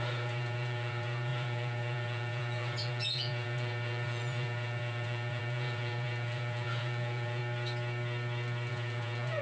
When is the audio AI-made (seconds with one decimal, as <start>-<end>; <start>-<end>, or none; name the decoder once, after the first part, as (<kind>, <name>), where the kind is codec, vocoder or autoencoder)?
0.0-7.4 (vocoder, Vocos); 8.7-9.4